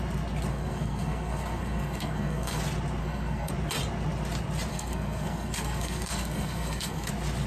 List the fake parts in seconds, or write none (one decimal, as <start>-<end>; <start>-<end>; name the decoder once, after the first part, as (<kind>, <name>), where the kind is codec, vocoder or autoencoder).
0.5-2.6 (codec, SNAC); 3.0-3.5; 4.7-7.1